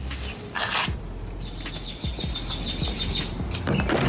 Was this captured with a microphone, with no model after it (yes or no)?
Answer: yes